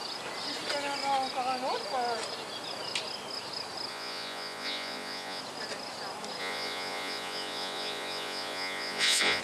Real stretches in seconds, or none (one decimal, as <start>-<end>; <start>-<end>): 0.0-3.9; 5.4-6.4